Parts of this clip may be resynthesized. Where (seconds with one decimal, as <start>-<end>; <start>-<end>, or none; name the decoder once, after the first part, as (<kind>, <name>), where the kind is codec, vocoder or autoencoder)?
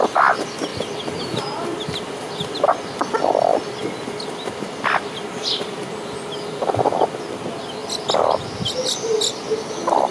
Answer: none